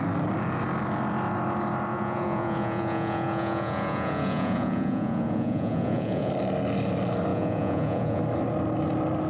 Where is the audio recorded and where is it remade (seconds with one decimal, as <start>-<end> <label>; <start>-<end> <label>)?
0.0-1.9 recorded; 1.9-6.3 remade; 6.3-7.3 recorded; 7.3-8.2 remade; 8.2-9.3 recorded